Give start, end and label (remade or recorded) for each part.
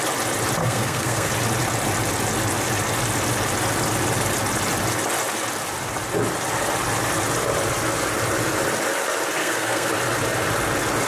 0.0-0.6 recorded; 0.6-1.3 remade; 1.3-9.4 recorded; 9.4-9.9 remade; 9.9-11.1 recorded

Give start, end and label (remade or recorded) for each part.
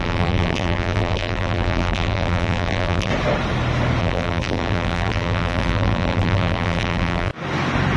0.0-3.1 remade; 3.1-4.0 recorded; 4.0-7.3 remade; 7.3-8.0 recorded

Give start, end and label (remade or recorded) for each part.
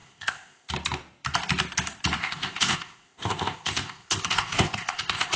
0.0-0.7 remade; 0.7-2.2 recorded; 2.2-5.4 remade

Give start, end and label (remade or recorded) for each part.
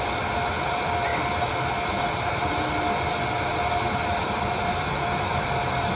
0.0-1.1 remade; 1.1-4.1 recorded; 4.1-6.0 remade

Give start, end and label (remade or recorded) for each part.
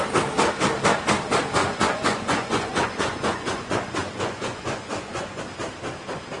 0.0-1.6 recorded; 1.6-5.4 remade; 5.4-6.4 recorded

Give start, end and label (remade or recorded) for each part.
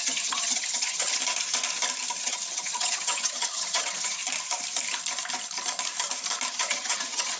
0.0-1.2 remade; 1.2-2.2 recorded; 2.2-4.2 remade; 4.2-6.5 recorded; 6.5-7.4 remade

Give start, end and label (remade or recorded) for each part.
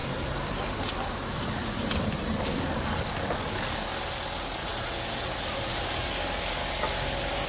0.0-2.4 recorded; 2.4-4.6 remade; 4.6-6.0 recorded; 6.0-6.6 remade; 6.6-7.5 recorded